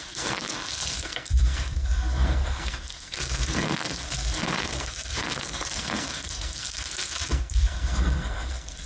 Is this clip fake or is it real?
fake